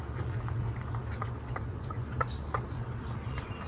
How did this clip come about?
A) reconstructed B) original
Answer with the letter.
A